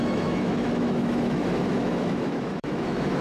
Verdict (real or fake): fake